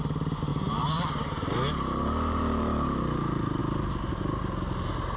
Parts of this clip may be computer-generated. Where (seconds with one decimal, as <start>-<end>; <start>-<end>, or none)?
0.5-3.6

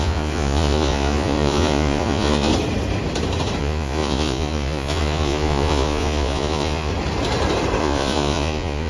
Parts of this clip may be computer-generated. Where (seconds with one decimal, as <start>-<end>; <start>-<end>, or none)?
0.0-2.5; 3.6-6.9; 7.8-8.9

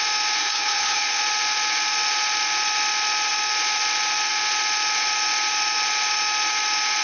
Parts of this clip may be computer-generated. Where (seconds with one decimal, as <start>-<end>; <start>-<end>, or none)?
0.4-1.2

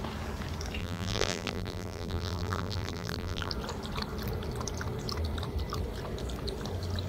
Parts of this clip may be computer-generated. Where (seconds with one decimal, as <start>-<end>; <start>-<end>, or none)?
0.8-3.5